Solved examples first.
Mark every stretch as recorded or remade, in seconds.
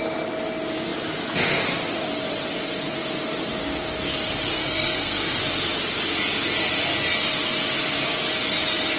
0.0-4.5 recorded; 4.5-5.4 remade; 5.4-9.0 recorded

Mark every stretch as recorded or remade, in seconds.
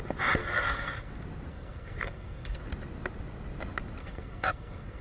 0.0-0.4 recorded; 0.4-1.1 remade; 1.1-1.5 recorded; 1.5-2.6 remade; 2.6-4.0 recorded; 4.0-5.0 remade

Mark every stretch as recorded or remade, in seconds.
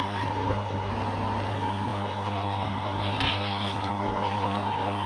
0.0-0.9 remade; 0.9-1.5 recorded; 1.5-5.1 remade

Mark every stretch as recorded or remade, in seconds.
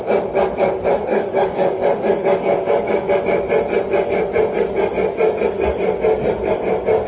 0.0-1.1 recorded; 1.1-3.1 remade; 3.1-7.1 recorded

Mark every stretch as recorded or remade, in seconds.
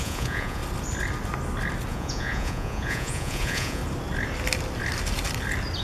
0.0-0.6 remade; 0.6-1.9 recorded; 1.9-3.8 remade; 3.8-5.8 recorded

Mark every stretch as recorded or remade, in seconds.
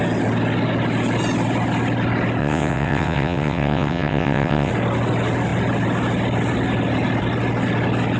0.0-2.4 recorded; 2.4-4.7 remade; 4.7-8.2 recorded